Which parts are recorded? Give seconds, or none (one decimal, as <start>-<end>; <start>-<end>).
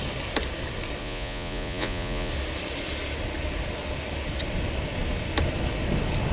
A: 0.0-1.0; 2.3-6.3